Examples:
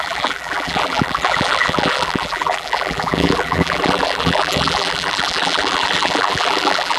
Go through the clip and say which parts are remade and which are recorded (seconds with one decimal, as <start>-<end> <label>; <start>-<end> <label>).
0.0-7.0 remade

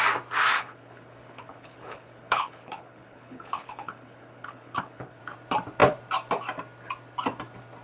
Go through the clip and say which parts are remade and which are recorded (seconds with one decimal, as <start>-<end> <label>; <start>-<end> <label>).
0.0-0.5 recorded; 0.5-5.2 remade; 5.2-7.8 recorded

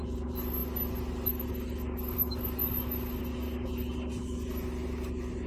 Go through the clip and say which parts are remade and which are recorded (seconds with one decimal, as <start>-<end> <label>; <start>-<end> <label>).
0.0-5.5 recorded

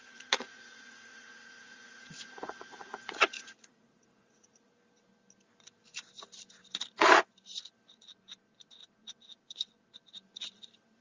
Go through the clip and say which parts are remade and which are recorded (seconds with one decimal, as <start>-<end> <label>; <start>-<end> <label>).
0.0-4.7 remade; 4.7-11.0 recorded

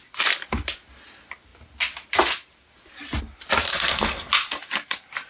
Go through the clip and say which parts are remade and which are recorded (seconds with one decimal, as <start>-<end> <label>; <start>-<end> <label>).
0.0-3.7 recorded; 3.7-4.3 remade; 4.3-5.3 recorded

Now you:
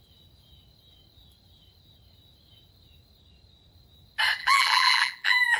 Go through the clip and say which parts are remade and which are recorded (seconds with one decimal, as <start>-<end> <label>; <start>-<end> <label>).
0.0-4.4 recorded; 4.4-5.6 remade